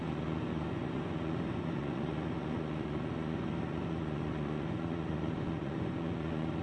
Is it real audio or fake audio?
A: fake